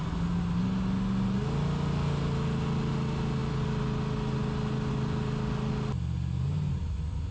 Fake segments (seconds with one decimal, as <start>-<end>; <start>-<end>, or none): none